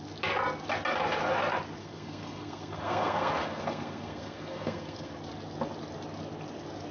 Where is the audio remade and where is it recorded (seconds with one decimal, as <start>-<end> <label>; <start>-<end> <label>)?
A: 0.0-1.8 recorded; 1.8-5.1 remade; 5.1-6.9 recorded